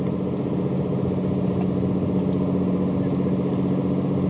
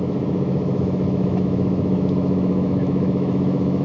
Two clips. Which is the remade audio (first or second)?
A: second